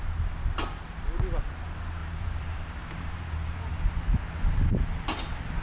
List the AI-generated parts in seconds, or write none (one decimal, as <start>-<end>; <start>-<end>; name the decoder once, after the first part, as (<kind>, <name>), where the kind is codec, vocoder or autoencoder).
2.0-3.9 (vocoder, BigVGAN v2)